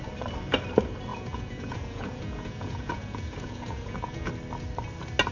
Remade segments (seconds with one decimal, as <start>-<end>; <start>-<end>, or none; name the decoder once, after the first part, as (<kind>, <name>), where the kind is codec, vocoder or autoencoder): 1.1-4.3 (vocoder, Vocos)